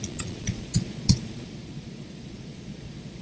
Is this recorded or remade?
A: remade